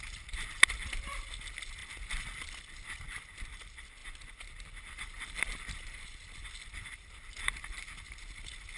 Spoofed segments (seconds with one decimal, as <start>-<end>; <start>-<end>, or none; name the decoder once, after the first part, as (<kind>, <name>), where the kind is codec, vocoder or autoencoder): none